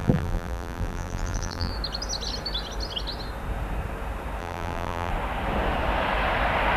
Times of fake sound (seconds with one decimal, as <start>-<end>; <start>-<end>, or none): 0.0-1.7; 4.4-5.1